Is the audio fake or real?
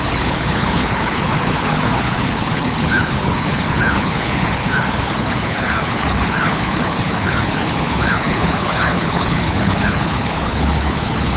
fake